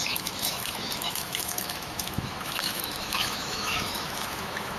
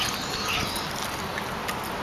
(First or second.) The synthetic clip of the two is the first